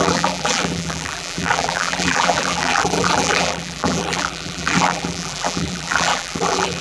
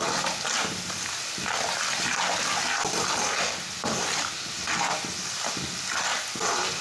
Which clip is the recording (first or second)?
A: second